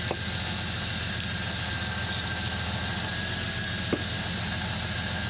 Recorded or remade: recorded